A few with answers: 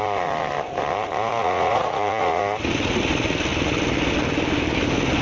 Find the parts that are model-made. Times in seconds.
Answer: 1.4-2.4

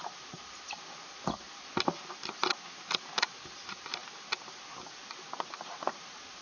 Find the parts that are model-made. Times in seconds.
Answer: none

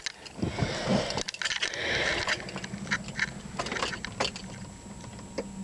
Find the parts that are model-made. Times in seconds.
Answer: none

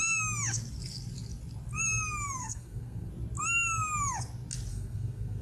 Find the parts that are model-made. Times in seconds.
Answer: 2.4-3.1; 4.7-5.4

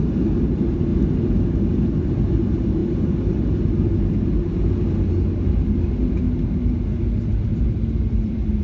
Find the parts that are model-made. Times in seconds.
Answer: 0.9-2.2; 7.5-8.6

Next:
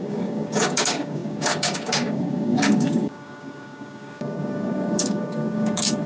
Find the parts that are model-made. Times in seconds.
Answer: 0.0-6.1